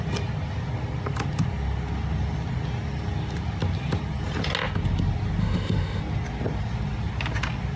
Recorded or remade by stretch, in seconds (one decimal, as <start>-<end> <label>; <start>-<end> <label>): 0.0-5.4 recorded; 5.4-6.0 remade; 6.0-7.8 recorded